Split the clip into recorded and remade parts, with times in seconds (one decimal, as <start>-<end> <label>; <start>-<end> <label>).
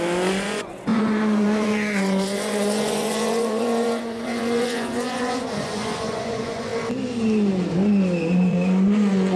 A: 0.0-6.7 remade; 6.7-8.3 recorded; 8.3-9.4 remade